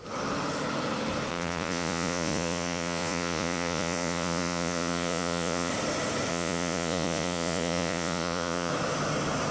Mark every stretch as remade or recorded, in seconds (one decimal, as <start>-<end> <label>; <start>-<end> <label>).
0.0-1.3 recorded; 1.3-5.7 remade; 5.7-6.3 recorded; 6.3-8.7 remade; 8.7-9.5 recorded